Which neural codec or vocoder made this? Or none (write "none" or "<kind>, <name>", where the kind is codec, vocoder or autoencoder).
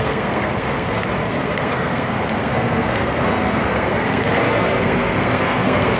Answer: codec, SNAC